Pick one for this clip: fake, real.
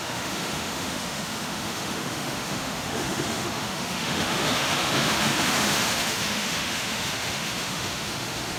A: fake